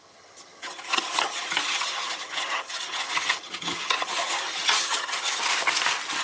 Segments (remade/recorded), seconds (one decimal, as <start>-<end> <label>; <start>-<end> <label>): 0.0-5.4 remade; 5.4-6.2 recorded